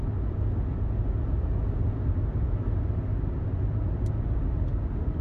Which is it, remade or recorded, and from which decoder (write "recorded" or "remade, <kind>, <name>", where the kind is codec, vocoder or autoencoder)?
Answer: recorded